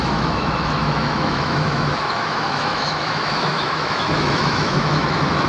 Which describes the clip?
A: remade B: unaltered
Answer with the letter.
A